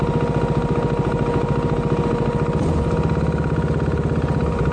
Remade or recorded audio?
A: recorded